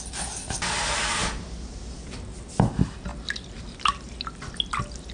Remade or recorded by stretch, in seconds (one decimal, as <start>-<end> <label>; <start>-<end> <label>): 0.0-5.1 recorded